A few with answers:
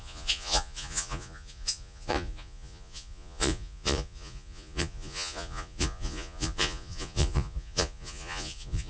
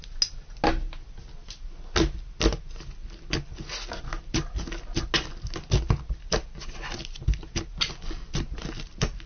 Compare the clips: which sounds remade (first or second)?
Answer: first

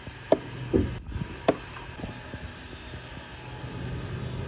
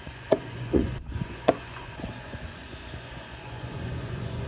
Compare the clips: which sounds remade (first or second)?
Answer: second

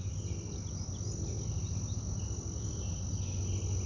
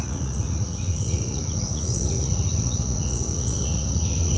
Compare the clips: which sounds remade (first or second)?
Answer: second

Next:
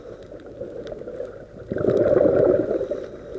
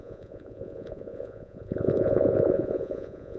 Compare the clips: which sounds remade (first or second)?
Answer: second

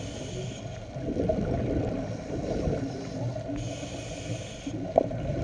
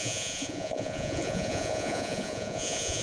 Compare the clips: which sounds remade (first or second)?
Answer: second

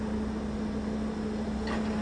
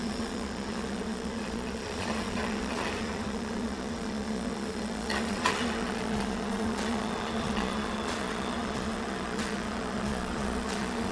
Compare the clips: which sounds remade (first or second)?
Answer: second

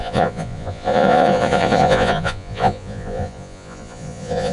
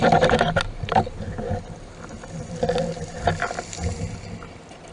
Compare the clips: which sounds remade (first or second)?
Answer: first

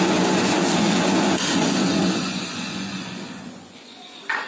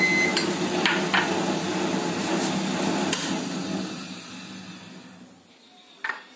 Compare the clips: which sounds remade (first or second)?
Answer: first